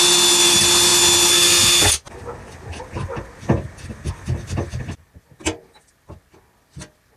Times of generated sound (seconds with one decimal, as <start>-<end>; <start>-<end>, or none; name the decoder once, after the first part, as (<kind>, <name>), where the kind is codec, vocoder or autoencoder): none